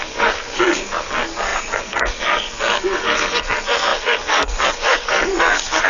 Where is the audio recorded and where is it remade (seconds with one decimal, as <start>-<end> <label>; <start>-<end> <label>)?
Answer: 0.0-5.9 remade